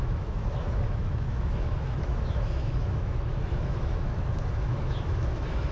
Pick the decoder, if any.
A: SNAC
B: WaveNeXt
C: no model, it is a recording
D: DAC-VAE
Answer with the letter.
D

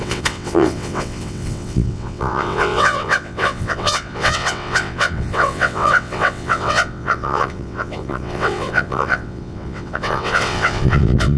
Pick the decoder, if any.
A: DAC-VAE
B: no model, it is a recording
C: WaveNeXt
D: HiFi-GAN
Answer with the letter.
C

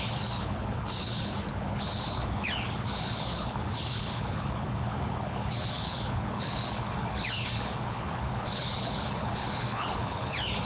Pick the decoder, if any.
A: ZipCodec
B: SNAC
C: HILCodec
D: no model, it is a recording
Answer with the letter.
C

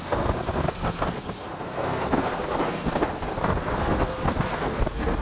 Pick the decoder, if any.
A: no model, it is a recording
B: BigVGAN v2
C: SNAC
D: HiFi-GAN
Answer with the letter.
C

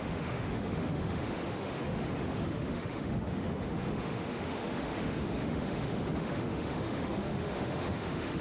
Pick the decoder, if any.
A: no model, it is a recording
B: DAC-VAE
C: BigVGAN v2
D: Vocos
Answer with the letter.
B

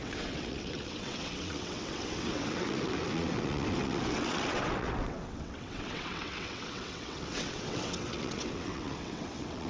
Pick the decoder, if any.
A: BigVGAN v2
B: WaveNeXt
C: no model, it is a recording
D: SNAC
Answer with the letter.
B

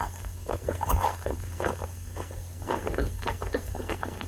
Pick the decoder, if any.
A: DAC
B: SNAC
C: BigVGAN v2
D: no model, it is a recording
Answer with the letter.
B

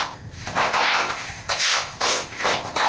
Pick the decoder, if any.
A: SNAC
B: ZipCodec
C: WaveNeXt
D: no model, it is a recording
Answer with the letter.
B